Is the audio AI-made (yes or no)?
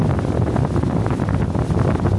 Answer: no